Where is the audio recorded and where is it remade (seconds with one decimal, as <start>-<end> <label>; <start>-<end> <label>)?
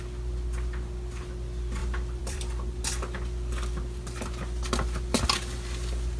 0.0-1.8 recorded; 1.8-2.8 remade; 2.8-6.2 recorded